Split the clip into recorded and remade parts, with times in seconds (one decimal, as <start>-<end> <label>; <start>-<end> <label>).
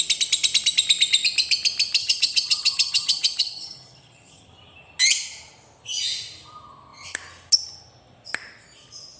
0.0-2.0 recorded; 2.0-4.5 remade; 4.5-9.2 recorded